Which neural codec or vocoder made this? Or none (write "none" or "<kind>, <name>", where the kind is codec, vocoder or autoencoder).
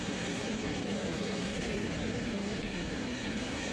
codec, SNAC